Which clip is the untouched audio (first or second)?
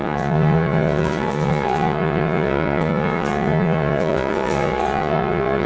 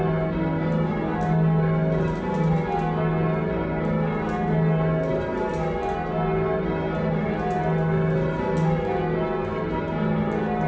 second